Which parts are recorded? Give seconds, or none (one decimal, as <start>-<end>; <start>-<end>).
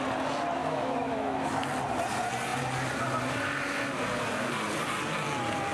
0.0-0.6; 1.6-5.7